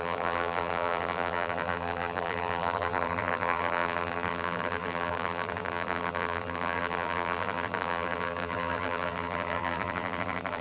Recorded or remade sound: remade